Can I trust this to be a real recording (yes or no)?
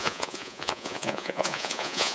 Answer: no